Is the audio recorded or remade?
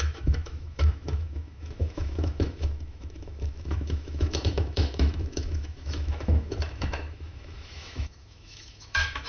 remade